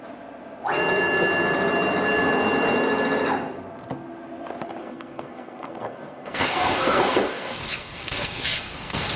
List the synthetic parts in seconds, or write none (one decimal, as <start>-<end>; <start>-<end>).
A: 4.8-9.2